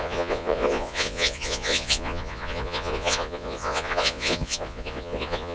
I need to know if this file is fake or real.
fake